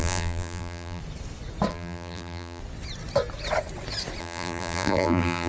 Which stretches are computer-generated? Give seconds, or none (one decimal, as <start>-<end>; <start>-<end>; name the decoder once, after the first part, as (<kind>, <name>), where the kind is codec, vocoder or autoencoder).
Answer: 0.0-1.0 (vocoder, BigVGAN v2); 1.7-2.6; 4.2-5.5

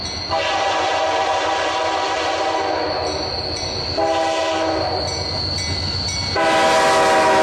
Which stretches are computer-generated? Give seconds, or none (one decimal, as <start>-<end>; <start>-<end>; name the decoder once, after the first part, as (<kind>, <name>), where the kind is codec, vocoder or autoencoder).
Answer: none

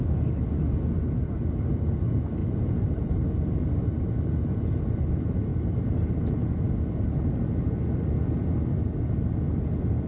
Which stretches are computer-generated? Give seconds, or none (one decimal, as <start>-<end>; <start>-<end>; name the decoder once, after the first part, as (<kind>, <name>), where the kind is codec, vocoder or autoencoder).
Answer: 2.4-3.5 (vocoder, BigVGAN v2); 5.5-6.2